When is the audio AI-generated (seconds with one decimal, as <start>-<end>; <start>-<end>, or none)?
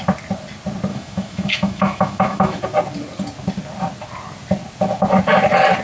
0.9-2.6